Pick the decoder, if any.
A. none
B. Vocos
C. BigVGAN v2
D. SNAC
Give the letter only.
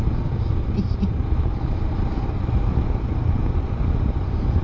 A